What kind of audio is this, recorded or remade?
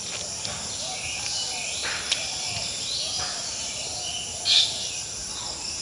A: recorded